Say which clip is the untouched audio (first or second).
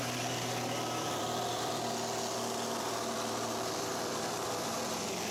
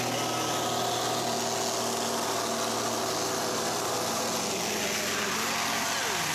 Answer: second